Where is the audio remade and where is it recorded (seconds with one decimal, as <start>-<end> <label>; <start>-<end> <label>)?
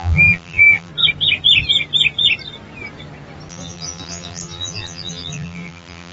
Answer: 0.0-0.9 remade; 0.9-3.5 recorded; 3.5-6.1 remade